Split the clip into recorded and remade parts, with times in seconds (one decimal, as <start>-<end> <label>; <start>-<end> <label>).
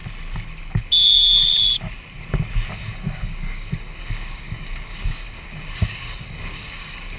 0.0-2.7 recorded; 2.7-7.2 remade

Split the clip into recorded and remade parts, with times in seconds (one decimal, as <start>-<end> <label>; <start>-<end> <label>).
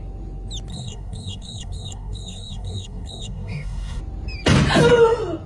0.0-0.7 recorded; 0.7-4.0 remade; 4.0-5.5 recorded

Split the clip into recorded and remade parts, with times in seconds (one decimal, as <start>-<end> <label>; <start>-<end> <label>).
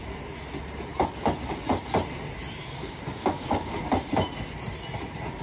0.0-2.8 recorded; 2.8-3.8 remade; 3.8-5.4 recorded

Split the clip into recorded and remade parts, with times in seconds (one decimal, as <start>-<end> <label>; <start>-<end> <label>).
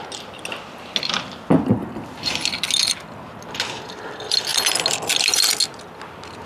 0.0-6.5 recorded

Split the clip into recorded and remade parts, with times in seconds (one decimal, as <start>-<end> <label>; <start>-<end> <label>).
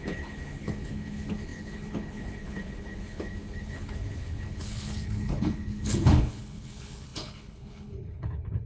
0.0-8.7 remade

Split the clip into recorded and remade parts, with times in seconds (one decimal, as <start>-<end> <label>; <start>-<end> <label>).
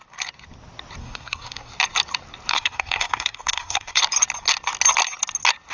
0.0-1.0 recorded; 1.0-1.7 remade; 1.7-2.5 recorded; 2.5-4.0 remade; 4.0-5.7 recorded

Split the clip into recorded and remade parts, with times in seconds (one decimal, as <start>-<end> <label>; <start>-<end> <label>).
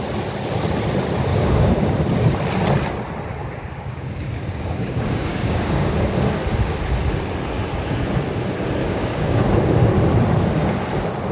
0.0-1.3 recorded; 1.3-2.0 remade; 2.0-3.4 recorded; 3.4-5.9 remade; 5.9-8.8 recorded; 8.8-9.4 remade; 9.4-11.3 recorded